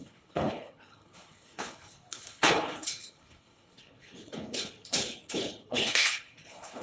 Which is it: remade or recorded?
remade